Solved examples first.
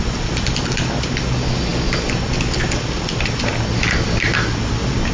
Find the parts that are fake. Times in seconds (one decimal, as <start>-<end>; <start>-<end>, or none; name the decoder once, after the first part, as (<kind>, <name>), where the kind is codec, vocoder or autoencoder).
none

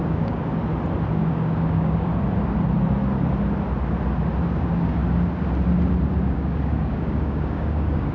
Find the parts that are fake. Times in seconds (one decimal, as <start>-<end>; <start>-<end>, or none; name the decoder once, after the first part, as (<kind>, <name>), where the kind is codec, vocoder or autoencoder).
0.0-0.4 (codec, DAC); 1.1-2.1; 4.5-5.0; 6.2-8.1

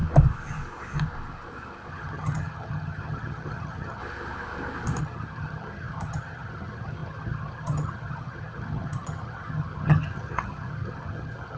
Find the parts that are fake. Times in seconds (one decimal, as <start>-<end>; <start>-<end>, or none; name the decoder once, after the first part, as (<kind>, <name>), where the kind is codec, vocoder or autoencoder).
1.9-4.0 (vocoder, HiFi-GAN); 5.0-11.6